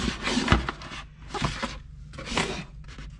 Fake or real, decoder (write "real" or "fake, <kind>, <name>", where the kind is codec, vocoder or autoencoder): real